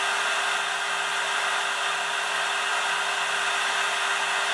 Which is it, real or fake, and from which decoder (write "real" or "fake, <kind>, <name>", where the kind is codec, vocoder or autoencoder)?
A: real